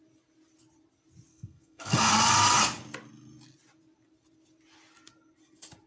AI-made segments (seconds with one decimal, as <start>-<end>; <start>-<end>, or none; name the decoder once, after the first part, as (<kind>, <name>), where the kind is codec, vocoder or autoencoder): 1.3-2.1 (codec, SNAC)